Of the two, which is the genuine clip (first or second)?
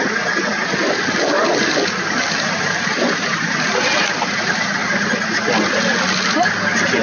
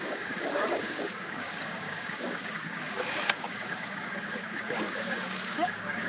first